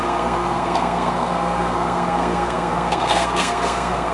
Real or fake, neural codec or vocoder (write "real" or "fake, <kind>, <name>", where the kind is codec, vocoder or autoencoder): fake, codec, SNAC